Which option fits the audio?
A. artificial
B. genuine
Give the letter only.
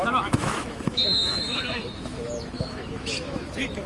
A